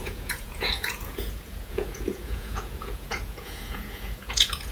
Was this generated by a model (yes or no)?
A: yes